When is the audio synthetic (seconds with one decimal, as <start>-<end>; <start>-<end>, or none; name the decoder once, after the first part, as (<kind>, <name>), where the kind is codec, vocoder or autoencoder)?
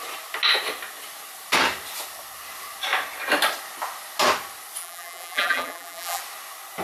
4.8-6.2 (vocoder, BigVGAN v2)